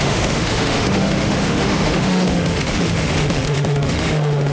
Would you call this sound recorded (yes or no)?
no